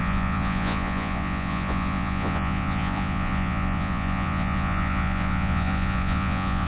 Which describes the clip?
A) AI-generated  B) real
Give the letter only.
A